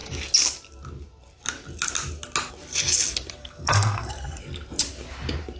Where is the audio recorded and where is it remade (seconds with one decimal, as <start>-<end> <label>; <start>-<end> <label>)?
0.0-3.4 recorded; 3.4-4.4 remade; 4.4-5.6 recorded